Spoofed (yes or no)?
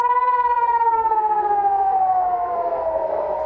yes